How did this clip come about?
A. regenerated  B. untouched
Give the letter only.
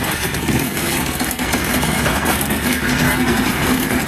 A